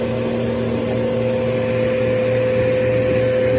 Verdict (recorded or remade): recorded